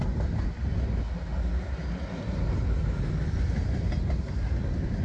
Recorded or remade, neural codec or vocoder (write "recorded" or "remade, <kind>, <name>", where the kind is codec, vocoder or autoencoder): recorded